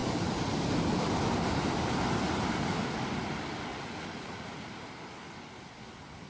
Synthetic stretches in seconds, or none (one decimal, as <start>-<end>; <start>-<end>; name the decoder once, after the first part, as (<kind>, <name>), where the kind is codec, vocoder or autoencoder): 3.7-4.8 (vocoder, Vocos)